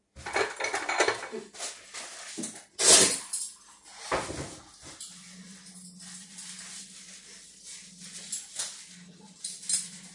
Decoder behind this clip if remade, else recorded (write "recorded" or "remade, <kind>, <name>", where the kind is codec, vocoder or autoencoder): recorded